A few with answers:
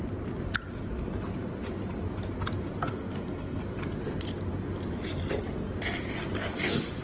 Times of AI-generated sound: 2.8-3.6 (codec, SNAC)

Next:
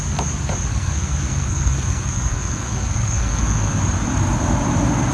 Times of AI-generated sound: 0.7-3.8 (codec, SNAC)